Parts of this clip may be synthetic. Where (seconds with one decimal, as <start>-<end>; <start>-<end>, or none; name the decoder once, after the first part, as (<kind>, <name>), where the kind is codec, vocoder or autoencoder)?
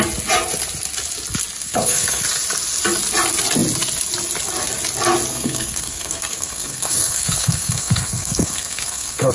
1.6-2.2 (codec, SNAC); 5.3-9.3